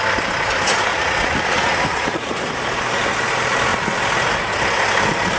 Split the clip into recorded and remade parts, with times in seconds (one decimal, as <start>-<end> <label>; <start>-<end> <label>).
0.0-0.9 recorded; 0.9-2.3 remade; 2.3-5.4 recorded